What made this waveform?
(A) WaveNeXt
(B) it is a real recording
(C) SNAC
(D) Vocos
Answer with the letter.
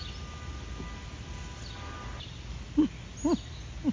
B